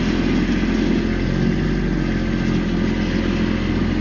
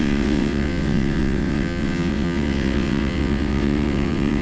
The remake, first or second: second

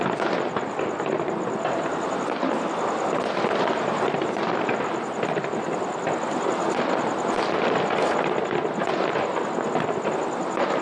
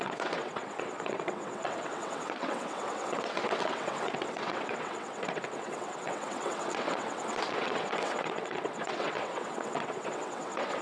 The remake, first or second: second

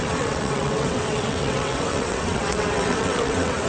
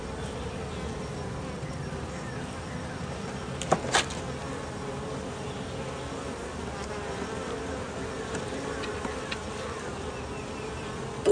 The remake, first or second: first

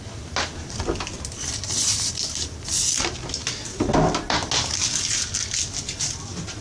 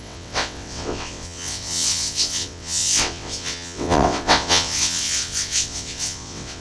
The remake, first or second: second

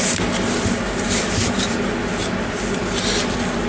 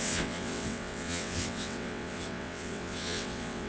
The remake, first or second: second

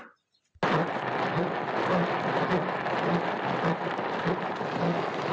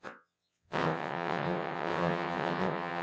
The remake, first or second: second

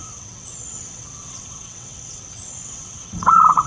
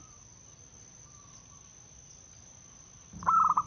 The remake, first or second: first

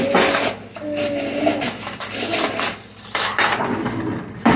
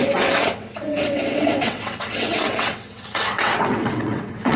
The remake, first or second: second